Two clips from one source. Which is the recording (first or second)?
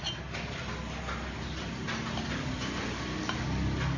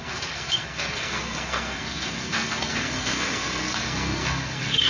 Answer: first